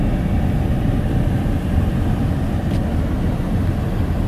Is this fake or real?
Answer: real